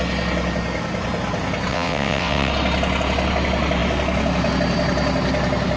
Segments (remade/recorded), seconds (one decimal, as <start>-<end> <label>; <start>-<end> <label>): 0.0-1.7 recorded; 1.7-2.5 remade; 2.5-5.8 recorded